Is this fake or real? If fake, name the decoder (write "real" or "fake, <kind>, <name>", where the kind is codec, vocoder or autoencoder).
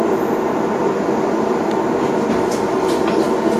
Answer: real